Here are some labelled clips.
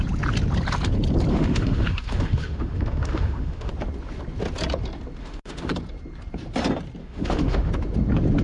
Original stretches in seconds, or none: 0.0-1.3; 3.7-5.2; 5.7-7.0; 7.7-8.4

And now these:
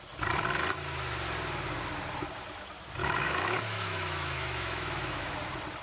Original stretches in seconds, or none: 0.0-3.0; 5.3-5.8

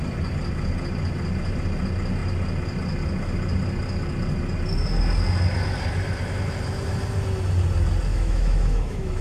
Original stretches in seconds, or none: 0.0-8.1

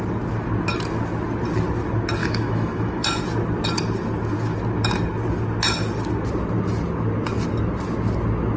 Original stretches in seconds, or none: 0.0-2.2; 3.2-8.6

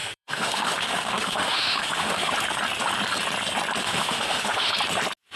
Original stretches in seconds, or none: 2.3-3.8; 4.7-5.4

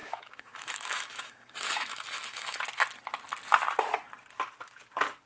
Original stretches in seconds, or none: 2.6-5.3

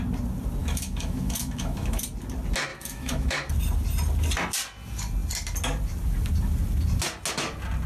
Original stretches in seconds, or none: 0.0-0.6; 2.0-2.7; 3.5-7.9